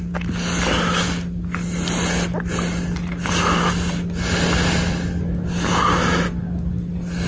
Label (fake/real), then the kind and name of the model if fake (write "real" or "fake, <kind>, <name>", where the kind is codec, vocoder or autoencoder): real